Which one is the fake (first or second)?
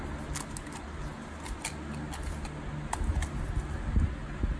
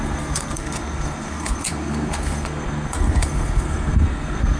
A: second